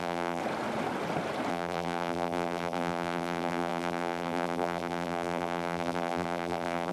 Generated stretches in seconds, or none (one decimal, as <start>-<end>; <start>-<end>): 0.0-0.4; 1.5-6.9